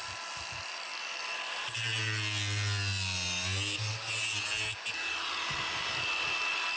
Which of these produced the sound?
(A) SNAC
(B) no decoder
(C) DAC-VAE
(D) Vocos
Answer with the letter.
B